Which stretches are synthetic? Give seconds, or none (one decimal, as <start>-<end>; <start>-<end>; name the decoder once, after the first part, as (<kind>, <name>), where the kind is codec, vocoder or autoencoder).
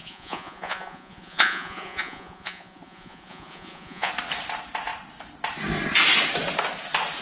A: 0.0-4.1 (vocoder, Vocos)